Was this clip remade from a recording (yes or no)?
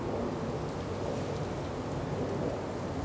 no